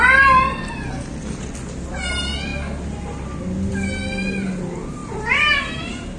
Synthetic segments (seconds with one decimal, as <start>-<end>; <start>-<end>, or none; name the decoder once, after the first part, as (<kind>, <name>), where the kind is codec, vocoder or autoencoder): 5.0-5.6 (vocoder, BigVGAN v2)